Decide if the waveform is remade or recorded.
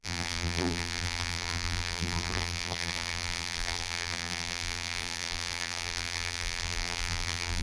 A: remade